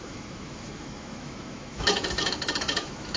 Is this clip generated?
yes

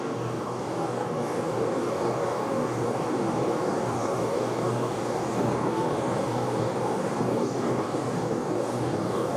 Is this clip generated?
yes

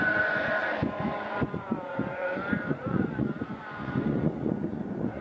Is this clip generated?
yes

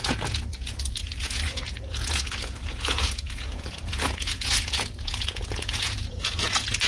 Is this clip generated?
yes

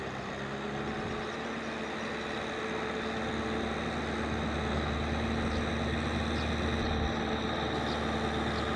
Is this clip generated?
no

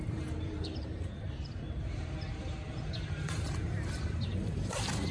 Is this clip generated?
yes